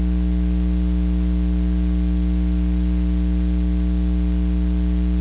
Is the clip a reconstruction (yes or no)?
no